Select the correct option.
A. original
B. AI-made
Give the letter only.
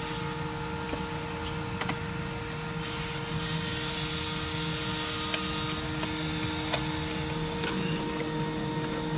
A